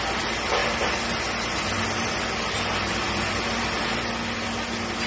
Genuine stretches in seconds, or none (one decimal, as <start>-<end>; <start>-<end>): 0.0-5.1